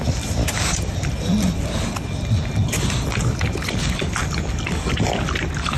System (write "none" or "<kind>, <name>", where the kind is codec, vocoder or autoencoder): none